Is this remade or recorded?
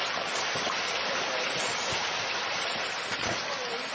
recorded